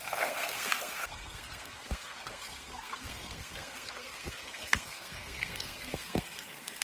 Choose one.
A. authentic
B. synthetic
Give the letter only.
B